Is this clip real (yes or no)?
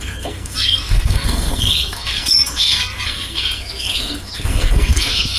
no